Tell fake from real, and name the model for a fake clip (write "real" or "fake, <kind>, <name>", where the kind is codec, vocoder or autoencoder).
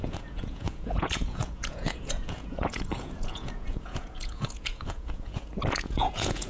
fake, vocoder, Vocos